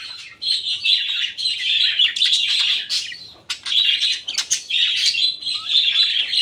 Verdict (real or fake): real